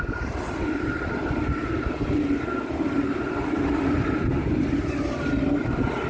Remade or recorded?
recorded